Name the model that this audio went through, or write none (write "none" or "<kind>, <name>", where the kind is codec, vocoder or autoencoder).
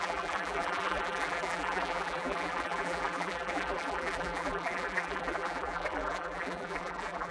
vocoder, BigVGAN v2